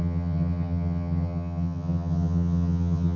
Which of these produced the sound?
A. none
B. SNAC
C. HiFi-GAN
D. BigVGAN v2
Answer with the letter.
C